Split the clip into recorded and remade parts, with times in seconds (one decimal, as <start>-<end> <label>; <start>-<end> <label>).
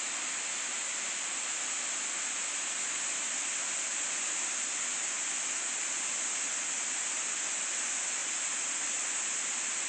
0.0-9.9 recorded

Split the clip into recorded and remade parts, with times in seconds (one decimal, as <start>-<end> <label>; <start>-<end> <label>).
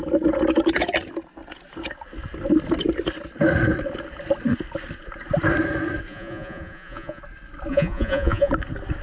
0.0-6.1 recorded; 6.1-7.2 remade; 7.2-7.7 recorded; 7.7-8.5 remade; 8.5-9.0 recorded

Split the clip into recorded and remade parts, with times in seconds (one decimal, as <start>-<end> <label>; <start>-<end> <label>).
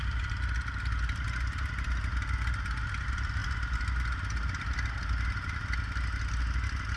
0.0-7.0 recorded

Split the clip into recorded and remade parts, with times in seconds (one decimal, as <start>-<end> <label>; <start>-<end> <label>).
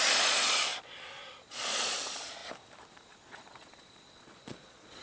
0.0-0.7 remade; 0.7-1.5 recorded; 1.5-2.4 remade; 2.4-3.3 recorded; 3.3-5.0 remade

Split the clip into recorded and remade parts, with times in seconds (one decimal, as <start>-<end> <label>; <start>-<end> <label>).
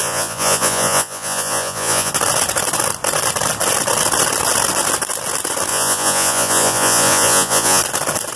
0.0-2.1 remade; 2.1-5.7 recorded; 5.7-7.8 remade; 7.8-8.4 recorded